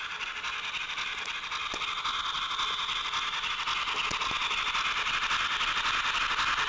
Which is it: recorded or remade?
recorded